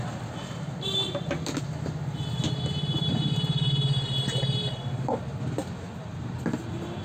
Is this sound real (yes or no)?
yes